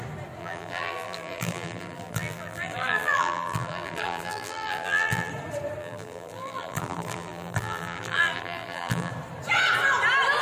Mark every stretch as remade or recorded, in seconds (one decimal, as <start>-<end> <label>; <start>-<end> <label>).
0.0-0.4 recorded; 0.4-5.3 remade; 5.3-5.8 recorded; 5.8-9.1 remade; 9.1-10.4 recorded